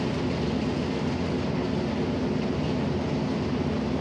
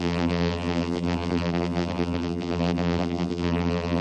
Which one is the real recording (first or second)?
first